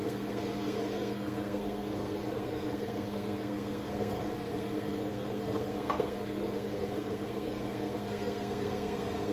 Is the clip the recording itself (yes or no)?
no